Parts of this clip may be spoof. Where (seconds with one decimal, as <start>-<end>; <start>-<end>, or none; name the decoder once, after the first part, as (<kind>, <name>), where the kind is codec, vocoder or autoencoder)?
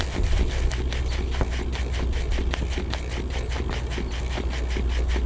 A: none